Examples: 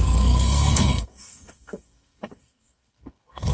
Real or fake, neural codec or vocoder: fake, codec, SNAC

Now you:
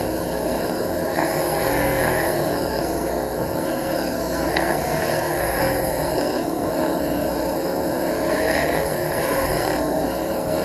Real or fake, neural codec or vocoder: fake, codec, SNAC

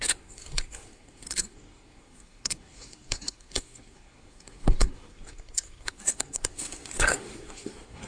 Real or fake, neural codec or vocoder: fake, codec, SNAC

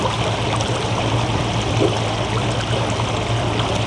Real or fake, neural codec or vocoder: real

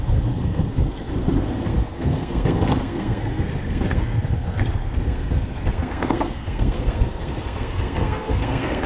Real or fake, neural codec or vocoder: fake, codec, SNAC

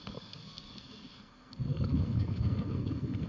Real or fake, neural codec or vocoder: fake, codec, SNAC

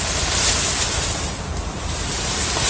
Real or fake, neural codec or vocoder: real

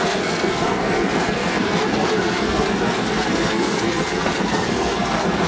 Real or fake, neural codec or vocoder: fake, codec, SNAC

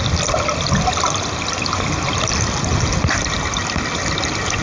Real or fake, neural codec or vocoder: real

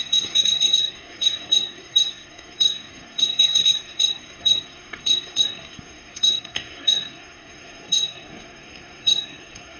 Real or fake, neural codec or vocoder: fake, codec, SNAC